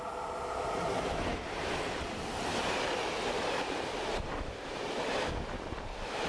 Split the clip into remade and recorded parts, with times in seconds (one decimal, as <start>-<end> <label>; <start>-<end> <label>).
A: 0.0-2.5 recorded; 2.5-5.1 remade; 5.1-6.3 recorded